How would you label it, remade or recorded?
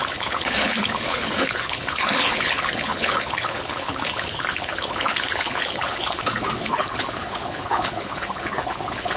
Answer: remade